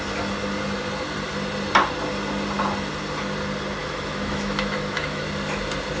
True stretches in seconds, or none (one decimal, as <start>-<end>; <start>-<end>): 0.0-3.8; 5.2-6.0